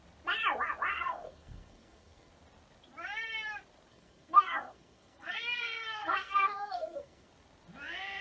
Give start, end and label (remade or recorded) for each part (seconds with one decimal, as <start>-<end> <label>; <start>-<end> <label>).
0.0-0.9 recorded; 0.9-2.3 remade; 2.3-3.9 recorded; 3.9-7.3 remade; 7.3-8.2 recorded

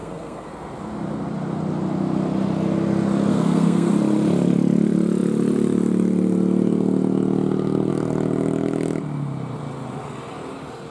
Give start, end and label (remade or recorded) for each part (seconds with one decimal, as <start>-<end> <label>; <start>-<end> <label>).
0.0-0.5 remade; 0.5-3.3 recorded; 3.3-3.9 remade; 3.9-10.9 recorded

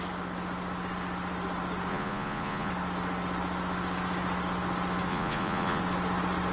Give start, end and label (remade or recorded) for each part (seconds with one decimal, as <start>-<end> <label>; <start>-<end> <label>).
0.0-1.9 recorded; 1.9-2.7 remade; 2.7-5.1 recorded; 5.1-5.8 remade; 5.8-6.5 recorded